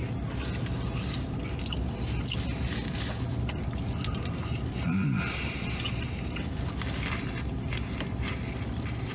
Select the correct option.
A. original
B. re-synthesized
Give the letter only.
A